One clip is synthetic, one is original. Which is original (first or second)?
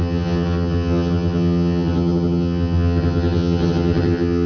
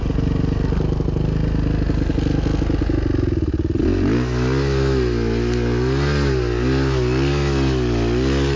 second